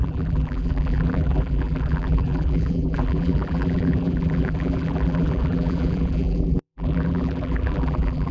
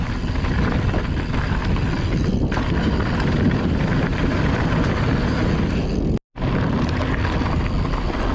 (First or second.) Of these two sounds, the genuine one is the second